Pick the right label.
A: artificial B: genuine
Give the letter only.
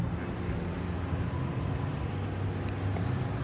B